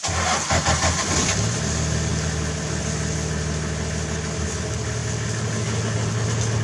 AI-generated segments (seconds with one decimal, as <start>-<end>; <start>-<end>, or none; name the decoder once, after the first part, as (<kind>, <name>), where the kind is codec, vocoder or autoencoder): none